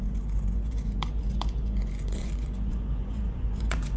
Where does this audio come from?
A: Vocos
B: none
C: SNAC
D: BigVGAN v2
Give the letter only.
A